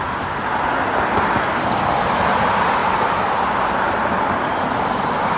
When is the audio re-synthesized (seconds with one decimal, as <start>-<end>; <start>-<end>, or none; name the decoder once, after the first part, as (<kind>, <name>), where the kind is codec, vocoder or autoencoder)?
2.8-5.4 (vocoder, BigVGAN v2)